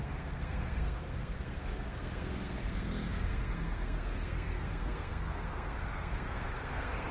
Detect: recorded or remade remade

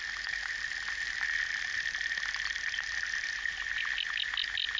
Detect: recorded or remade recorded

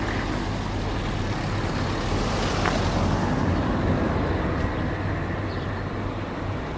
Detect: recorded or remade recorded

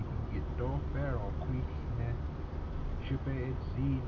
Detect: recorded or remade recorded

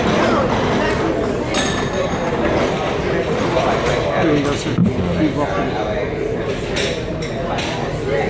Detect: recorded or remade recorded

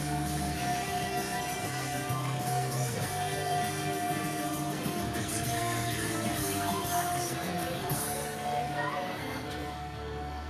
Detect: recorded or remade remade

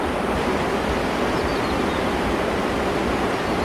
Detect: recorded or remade recorded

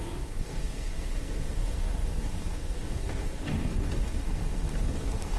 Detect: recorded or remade remade